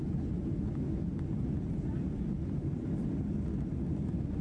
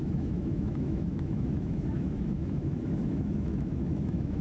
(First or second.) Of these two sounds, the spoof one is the second